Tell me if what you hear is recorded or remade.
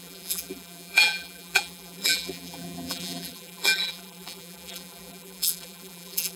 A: remade